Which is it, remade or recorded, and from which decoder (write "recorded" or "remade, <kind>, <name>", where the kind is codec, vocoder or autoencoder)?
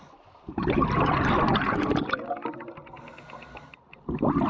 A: recorded